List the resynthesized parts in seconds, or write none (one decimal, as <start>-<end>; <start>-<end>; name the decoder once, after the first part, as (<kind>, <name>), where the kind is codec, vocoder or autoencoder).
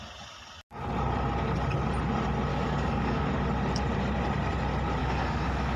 2.5-3.3 (codec, DAC); 5.0-5.8